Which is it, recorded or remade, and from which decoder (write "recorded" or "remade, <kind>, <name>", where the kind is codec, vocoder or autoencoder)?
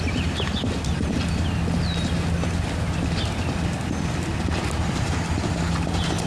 recorded